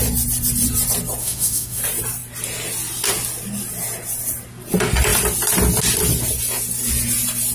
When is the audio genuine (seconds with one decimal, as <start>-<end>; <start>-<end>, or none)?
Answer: 0.0-1.2; 1.8-7.5